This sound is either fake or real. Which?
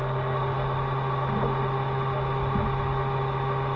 real